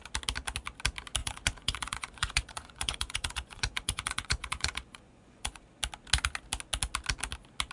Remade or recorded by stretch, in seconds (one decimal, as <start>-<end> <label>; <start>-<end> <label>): 0.0-1.2 recorded; 1.2-5.6 remade; 5.6-7.7 recorded